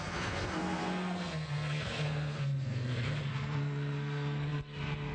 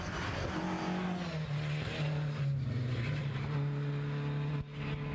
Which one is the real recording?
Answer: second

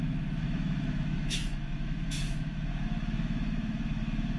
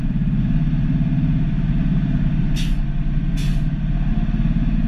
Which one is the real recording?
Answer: second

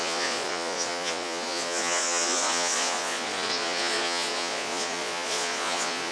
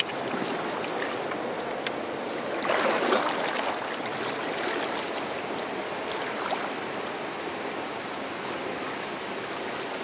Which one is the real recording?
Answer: second